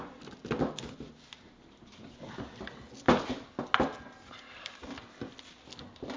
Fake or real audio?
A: real